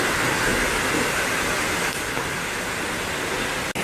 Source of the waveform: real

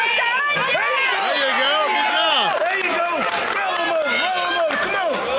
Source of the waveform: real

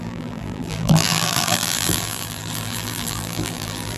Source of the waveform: fake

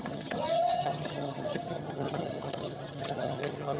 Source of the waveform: fake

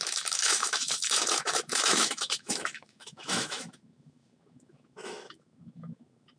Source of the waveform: fake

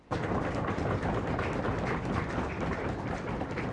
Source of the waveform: real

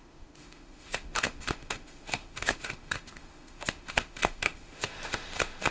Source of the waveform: fake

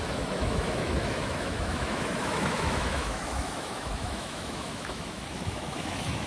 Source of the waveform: fake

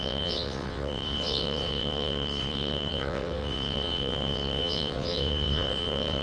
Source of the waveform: fake